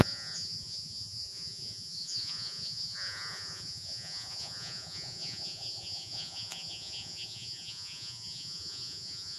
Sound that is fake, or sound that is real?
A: fake